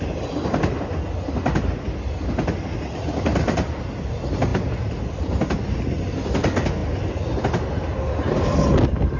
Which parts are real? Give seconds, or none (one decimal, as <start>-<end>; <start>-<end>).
0.0-9.2